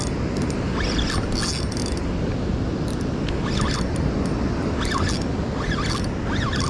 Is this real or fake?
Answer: real